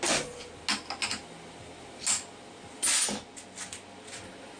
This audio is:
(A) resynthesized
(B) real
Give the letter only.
B